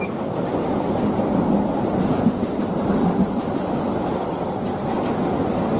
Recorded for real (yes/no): yes